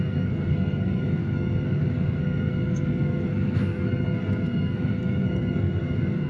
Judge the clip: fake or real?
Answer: fake